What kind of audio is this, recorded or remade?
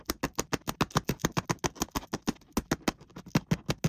recorded